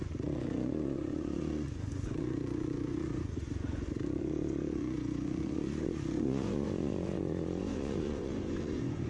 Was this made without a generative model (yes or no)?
no